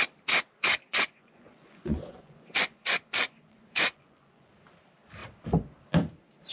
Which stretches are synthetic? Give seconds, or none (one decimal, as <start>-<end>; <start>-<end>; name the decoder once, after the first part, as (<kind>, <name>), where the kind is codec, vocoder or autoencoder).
0.9-4.5 (vocoder, Vocos)